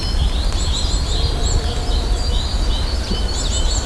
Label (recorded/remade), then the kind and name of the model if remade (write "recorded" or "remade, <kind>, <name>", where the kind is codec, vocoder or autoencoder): recorded